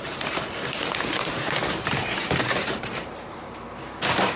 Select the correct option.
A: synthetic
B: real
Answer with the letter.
A